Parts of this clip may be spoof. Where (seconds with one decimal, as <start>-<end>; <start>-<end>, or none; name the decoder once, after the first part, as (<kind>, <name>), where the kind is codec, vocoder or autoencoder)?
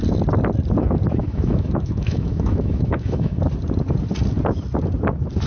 1.2-3.4 (autoencoder, DAC-VAE)